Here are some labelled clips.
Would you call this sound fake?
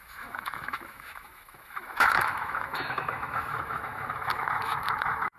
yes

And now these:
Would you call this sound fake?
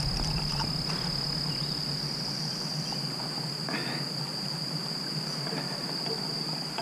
no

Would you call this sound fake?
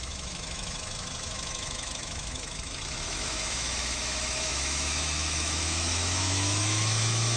yes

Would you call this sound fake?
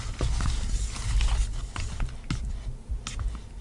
no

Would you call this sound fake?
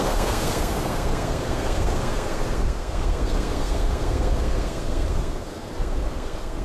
yes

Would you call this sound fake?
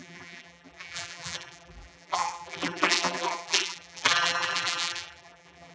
yes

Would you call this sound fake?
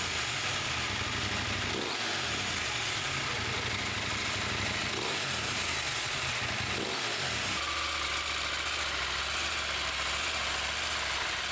no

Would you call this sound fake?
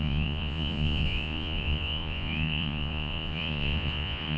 yes